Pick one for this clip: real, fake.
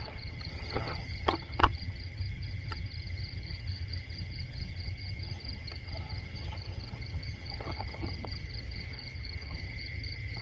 fake